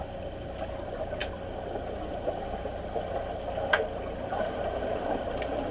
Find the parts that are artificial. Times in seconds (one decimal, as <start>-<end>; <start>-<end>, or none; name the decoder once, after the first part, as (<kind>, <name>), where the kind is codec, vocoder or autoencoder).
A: none